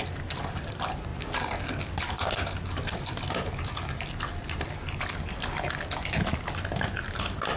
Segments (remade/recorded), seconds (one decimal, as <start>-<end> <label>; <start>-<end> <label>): 0.0-7.6 recorded